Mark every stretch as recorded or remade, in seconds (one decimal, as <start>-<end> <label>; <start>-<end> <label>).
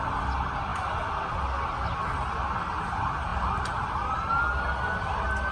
0.0-5.5 recorded